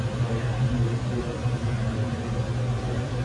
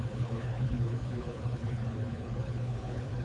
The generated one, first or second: second